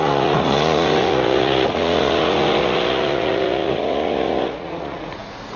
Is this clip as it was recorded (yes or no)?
no